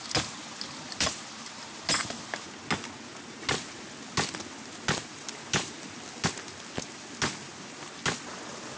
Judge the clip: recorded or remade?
recorded